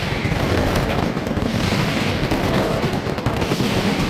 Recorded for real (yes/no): no